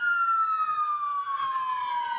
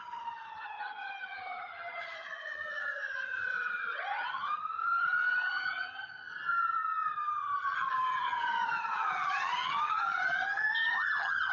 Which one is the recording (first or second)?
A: first